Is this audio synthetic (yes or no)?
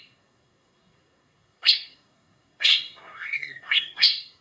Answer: yes